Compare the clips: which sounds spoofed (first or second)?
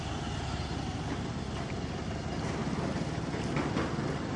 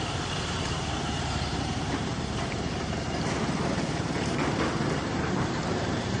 second